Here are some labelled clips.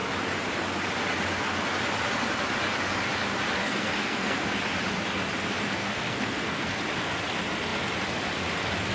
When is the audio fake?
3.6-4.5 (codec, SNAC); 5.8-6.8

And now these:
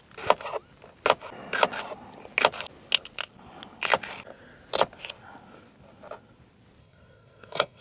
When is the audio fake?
6.8-7.8 (codec, SNAC)

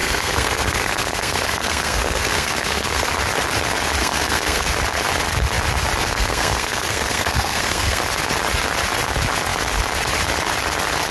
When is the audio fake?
0.0-3.1 (codec, SNAC); 4.0-4.7; 6.0-8.0

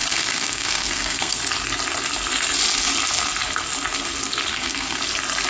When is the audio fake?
0.0-1.4 (codec, SNAC); 4.5-5.0